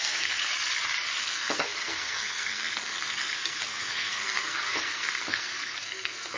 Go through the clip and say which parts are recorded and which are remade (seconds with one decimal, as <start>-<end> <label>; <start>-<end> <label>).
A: 0.0-0.4 remade; 0.4-1.2 recorded; 1.2-6.4 remade